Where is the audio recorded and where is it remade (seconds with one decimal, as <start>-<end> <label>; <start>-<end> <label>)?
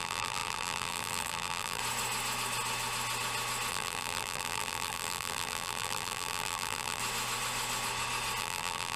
0.0-1.8 remade; 1.8-3.7 recorded; 3.7-7.0 remade; 7.0-8.4 recorded; 8.4-9.0 remade